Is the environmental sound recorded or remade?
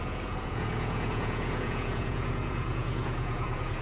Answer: remade